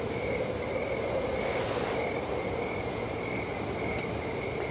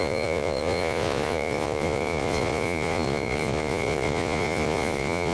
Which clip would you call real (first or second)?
first